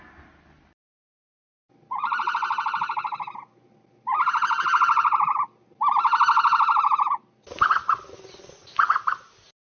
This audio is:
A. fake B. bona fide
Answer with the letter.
B